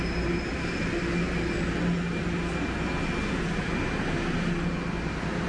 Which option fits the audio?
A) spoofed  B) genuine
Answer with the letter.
B